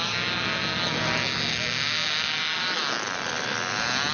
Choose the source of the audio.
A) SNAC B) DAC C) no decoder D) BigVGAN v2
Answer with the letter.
C